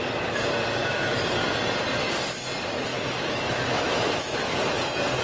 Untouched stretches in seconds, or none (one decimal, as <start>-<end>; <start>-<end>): 0.0-0.8; 1.3-2.9; 4.8-5.2